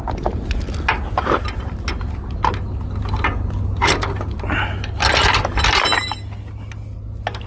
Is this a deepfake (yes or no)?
no